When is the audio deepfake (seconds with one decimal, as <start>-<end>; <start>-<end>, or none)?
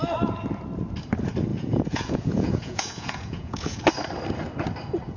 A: 1.5-3.8